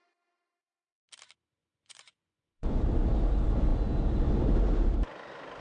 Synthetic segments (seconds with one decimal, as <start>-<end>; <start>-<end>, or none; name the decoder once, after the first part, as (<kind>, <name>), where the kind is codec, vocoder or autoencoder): 1.6-2.8 (vocoder, Vocos)